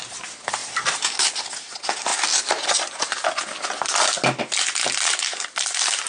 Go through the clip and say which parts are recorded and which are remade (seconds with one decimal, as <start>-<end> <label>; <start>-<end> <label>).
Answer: 0.0-6.1 recorded